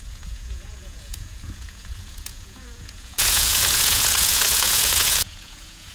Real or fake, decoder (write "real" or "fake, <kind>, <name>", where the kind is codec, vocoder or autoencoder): fake, vocoder, Vocos